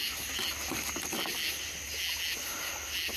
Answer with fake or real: real